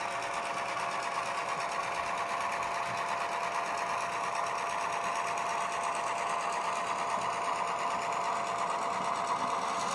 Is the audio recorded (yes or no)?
yes